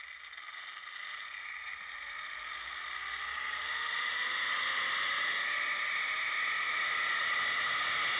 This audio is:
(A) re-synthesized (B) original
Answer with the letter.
B